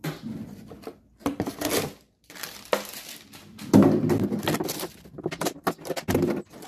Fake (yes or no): yes